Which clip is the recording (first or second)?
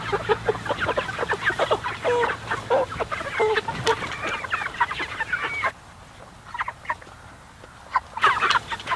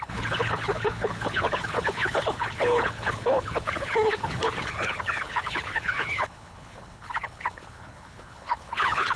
first